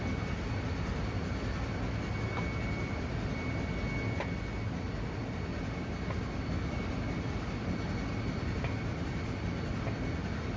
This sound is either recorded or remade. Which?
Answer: recorded